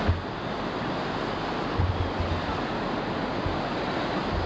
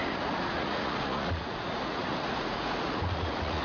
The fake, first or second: second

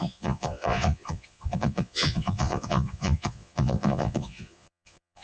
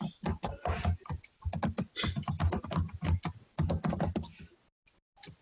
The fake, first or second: first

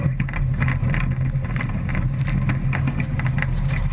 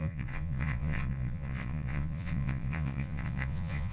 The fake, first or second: second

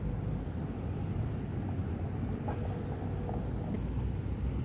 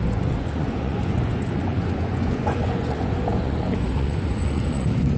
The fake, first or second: second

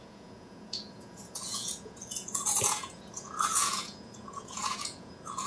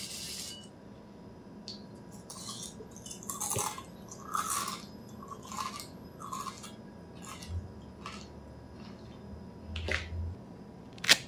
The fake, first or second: first